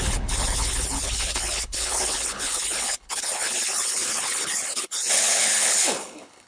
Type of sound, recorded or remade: remade